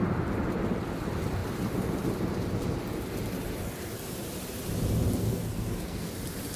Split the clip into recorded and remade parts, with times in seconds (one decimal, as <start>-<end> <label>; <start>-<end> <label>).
0.0-5.2 recorded; 5.2-6.1 remade; 6.1-6.6 recorded